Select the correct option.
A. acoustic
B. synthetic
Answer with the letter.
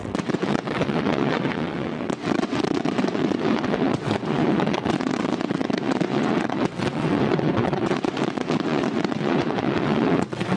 B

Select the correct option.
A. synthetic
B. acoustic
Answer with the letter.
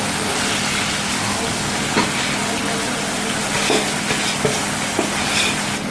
B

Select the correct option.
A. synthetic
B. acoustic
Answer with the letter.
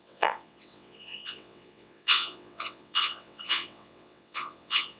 A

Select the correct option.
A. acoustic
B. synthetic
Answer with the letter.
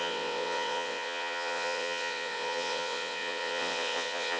B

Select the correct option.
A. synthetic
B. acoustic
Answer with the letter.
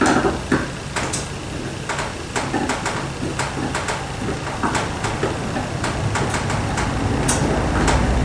B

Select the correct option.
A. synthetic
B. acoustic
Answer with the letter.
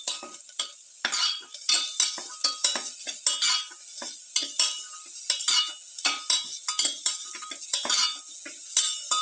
B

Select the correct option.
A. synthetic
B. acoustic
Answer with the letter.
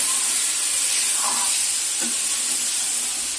B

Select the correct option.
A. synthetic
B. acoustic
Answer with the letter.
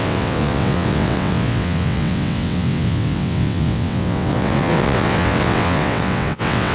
A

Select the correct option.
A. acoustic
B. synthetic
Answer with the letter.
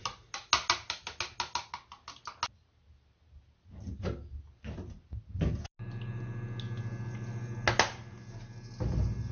A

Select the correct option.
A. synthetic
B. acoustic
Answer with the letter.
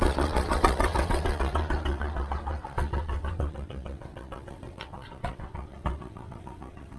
A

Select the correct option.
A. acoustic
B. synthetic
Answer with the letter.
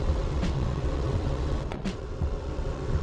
B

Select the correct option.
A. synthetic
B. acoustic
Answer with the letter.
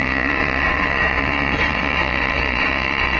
A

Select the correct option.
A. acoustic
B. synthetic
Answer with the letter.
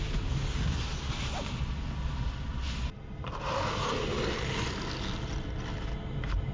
A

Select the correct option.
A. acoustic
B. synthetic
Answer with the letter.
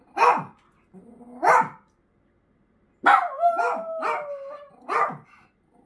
A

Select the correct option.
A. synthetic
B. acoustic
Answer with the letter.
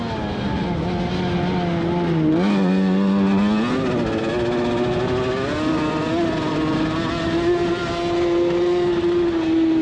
B